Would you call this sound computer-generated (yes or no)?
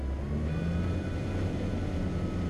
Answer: no